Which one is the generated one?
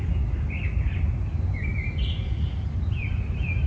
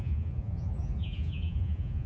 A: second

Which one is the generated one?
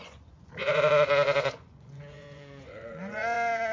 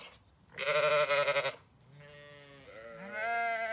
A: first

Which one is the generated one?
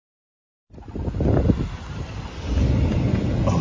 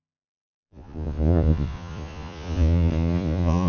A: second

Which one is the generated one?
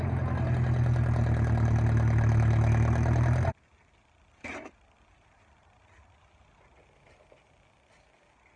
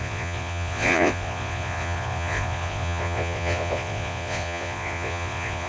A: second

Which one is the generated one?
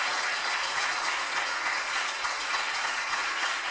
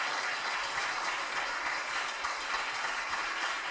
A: first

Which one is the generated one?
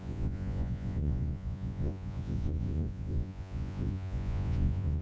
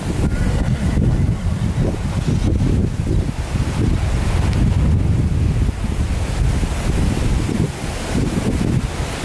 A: first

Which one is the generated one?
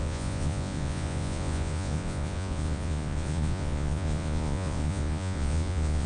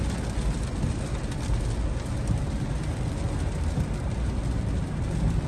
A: first